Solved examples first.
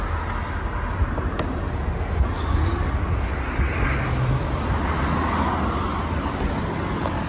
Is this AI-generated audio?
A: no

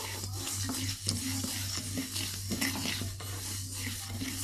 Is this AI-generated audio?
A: no